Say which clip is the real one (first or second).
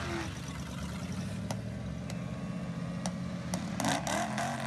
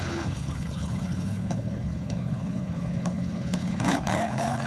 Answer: first